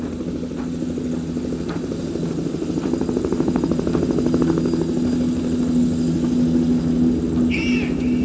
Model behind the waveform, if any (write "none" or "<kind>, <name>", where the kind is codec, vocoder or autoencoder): none